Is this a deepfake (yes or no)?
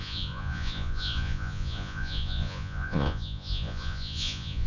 yes